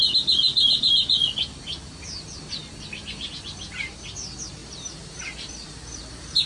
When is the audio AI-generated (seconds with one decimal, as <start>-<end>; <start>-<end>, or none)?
4.6-5.2